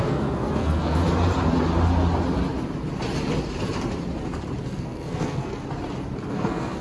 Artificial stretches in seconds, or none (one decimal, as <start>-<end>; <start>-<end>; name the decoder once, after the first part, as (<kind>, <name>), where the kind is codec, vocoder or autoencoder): 0.0-1.0 (codec, SNAC); 4.6-5.5; 6.3-6.8